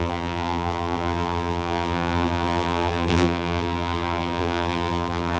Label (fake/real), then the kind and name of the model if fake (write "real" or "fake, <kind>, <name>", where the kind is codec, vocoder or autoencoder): fake, vocoder, BigVGAN v2